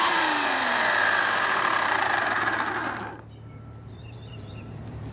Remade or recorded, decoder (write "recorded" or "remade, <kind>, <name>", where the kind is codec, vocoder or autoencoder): remade, vocoder, BigVGAN v2